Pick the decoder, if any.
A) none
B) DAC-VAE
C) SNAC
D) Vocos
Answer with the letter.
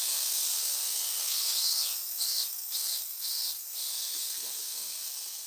C